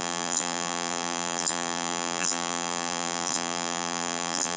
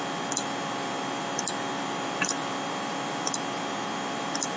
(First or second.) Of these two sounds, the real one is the second